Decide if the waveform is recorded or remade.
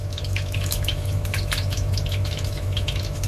remade